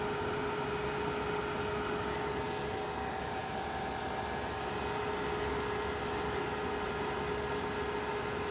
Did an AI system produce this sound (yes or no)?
no